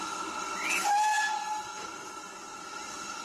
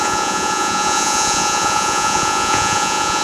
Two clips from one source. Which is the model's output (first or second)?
second